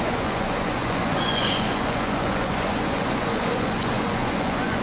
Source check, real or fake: fake